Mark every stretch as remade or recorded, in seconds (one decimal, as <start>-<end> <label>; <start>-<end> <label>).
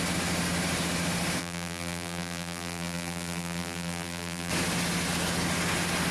0.0-1.4 recorded; 1.4-4.5 remade; 4.5-6.1 recorded